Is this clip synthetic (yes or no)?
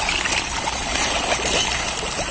no